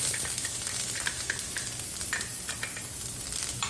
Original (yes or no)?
yes